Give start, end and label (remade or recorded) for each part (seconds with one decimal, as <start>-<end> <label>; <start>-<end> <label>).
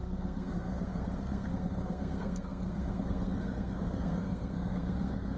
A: 0.0-5.4 remade